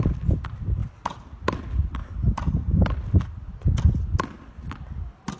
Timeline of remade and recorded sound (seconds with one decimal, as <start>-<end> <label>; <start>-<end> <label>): 0.0-0.8 recorded; 0.8-4.0 remade; 4.0-5.4 recorded